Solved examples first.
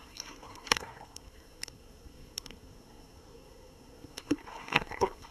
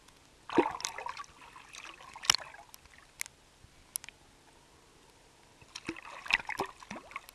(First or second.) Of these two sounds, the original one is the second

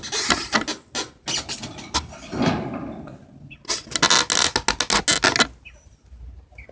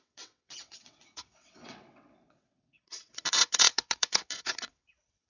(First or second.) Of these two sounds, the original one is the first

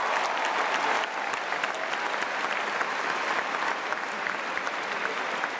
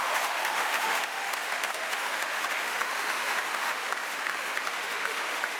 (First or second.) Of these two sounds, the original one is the first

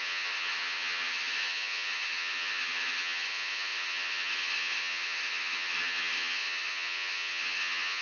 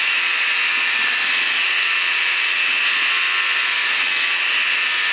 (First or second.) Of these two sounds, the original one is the second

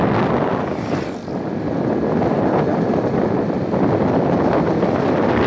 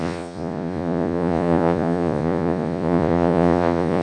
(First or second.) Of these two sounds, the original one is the first